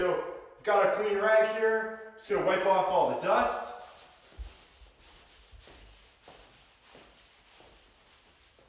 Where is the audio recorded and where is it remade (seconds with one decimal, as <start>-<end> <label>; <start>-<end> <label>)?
0.0-8.7 recorded